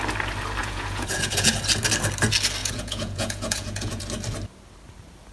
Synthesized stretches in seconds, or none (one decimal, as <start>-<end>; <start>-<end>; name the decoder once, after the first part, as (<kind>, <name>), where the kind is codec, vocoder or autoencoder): 0.6-1.5 (vocoder, Vocos); 2.6-4.0